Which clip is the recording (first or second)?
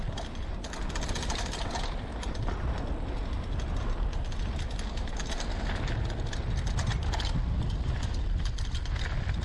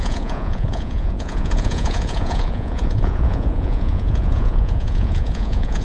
first